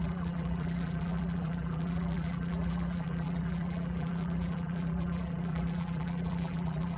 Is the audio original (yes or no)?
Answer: no